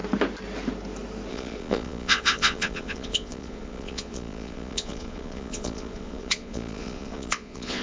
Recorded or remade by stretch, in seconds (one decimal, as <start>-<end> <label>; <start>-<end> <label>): 0.0-1.3 recorded; 1.3-7.8 remade